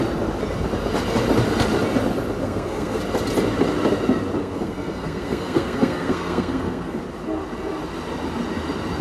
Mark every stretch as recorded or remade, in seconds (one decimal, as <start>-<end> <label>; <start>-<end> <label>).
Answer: 0.0-2.4 recorded; 2.4-3.0 remade; 3.0-4.4 recorded; 4.4-7.0 remade; 7.0-9.0 recorded